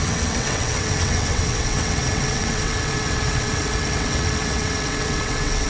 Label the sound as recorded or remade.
remade